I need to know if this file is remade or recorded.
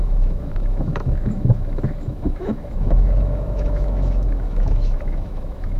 remade